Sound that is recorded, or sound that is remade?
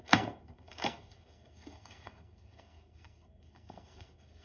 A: remade